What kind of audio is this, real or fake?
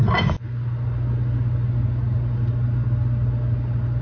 real